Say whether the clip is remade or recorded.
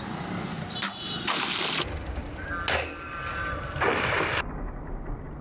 recorded